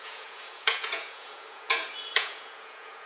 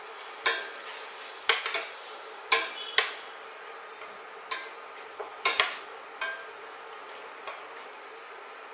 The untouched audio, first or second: second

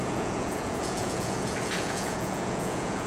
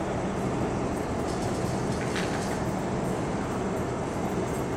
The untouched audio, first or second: second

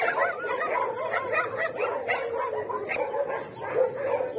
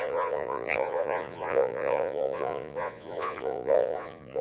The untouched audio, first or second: first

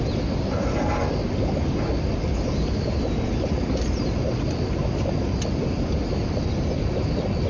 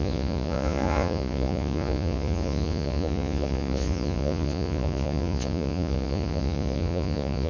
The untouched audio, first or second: first